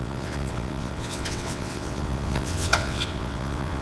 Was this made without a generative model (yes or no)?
no